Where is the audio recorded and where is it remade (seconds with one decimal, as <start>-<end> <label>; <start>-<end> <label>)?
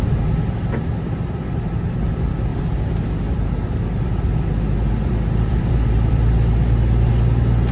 0.0-2.5 recorded; 2.5-7.1 remade; 7.1-7.7 recorded